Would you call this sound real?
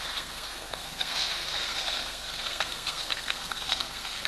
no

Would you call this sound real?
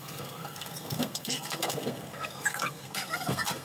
no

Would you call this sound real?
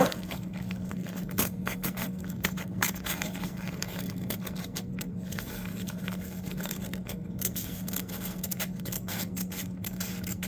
no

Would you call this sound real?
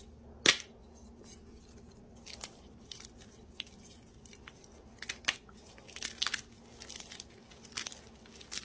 yes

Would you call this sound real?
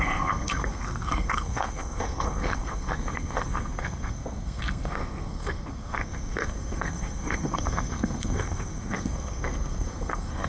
no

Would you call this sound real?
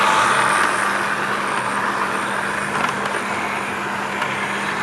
yes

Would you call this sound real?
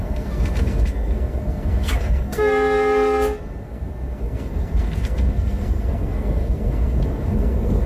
no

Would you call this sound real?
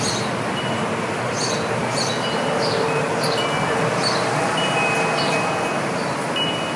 yes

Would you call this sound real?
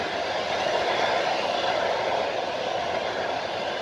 yes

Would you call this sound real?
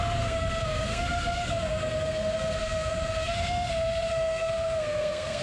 no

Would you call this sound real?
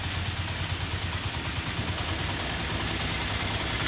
yes